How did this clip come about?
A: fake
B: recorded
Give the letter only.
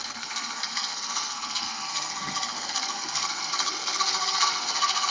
A